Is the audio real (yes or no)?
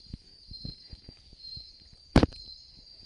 no